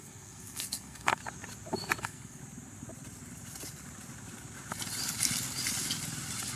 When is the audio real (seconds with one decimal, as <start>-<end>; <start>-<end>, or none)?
1.2-2.0; 2.4-6.6